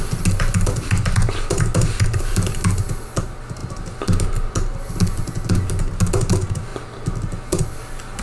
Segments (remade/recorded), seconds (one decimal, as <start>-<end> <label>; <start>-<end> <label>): 0.0-8.2 recorded